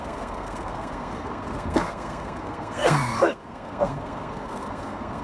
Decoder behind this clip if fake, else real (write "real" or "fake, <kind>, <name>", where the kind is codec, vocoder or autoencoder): fake, codec, SNAC